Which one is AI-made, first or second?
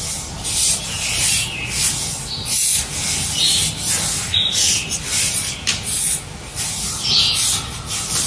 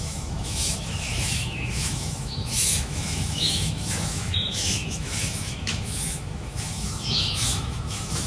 second